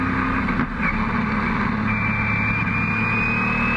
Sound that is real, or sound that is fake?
real